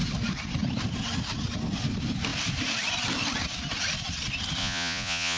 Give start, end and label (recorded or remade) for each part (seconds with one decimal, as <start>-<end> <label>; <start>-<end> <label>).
0.0-4.6 recorded; 4.6-5.4 remade